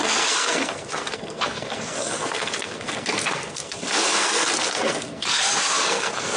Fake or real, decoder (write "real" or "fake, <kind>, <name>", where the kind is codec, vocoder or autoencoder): fake, codec, SNAC